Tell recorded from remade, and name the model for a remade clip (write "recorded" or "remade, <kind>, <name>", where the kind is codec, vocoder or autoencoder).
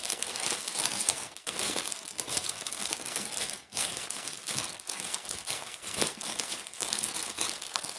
remade, codec, SNAC